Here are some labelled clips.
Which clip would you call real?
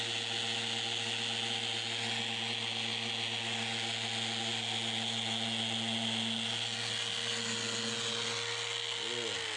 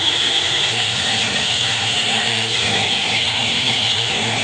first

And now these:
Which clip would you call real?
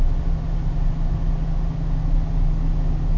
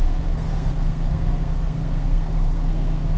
first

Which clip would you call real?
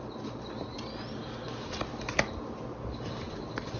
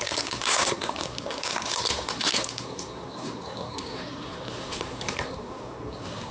first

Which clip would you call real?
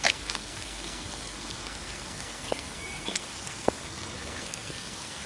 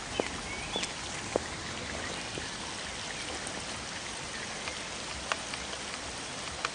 second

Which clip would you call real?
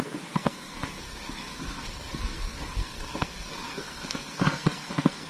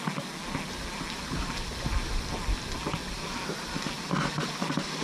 second